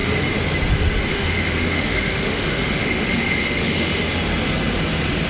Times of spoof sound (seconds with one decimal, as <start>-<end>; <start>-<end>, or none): 1.1-4.0